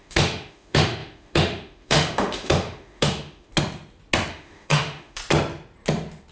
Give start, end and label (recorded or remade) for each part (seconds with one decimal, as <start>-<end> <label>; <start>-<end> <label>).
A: 0.0-3.5 remade; 3.5-4.3 recorded; 4.3-5.2 remade; 5.2-6.3 recorded